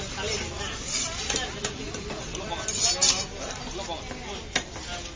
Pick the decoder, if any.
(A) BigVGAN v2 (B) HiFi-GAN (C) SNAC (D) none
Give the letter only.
D